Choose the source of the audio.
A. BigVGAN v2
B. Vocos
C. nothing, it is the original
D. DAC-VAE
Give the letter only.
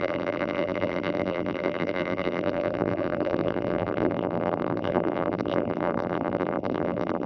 A